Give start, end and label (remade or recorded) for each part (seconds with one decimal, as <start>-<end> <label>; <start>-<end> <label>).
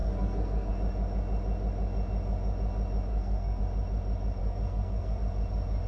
0.0-0.7 remade; 0.7-3.1 recorded; 3.1-3.6 remade; 3.6-4.4 recorded; 4.4-5.2 remade; 5.2-5.9 recorded